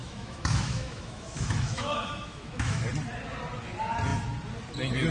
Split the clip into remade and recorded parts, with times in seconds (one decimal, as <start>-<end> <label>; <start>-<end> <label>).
0.0-2.8 remade; 2.8-5.1 recorded